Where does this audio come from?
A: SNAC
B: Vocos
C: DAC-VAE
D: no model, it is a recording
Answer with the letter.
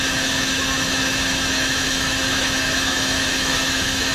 C